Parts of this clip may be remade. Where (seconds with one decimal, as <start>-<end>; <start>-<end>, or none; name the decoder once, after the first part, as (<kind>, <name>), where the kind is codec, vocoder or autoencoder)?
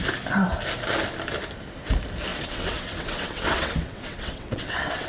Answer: 2.3-5.1 (vocoder, WaveNeXt)